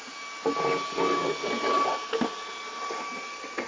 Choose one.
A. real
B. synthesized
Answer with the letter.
A